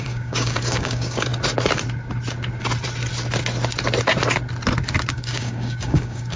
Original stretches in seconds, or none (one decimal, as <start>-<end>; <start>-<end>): 1.3-5.1